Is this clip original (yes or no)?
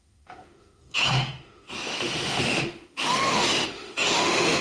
no